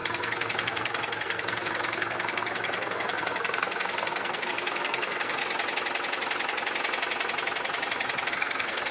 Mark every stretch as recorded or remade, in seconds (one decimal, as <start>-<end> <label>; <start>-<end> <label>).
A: 0.0-5.4 remade; 5.4-8.3 recorded; 8.3-8.9 remade